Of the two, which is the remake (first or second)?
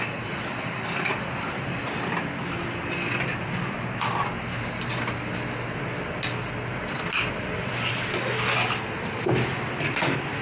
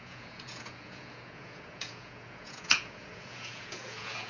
second